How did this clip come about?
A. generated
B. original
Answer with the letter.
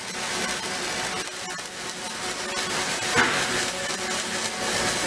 B